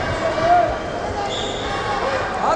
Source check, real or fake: real